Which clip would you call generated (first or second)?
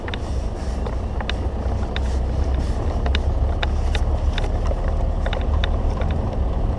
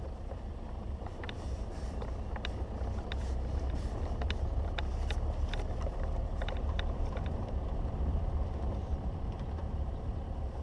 second